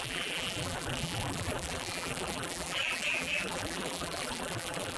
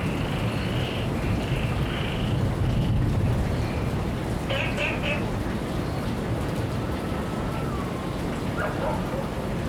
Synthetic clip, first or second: first